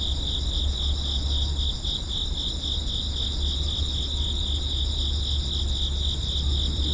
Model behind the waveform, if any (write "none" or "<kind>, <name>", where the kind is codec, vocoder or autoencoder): none